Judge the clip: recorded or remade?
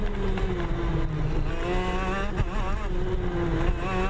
recorded